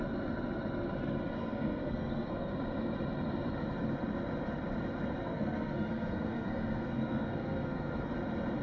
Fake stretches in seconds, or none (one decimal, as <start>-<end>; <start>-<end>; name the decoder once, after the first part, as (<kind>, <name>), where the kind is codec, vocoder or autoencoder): 1.4-2.5 (codec, SNAC); 5.2-8.1